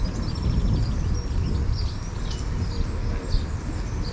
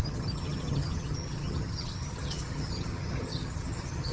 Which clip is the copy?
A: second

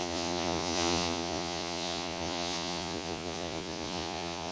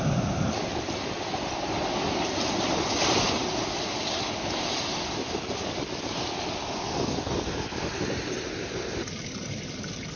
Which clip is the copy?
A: first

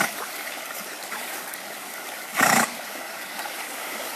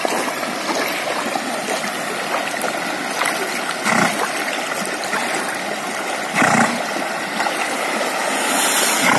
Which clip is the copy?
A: first